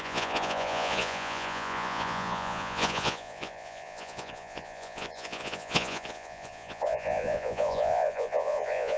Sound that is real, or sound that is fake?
fake